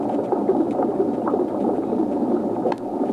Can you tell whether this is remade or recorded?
remade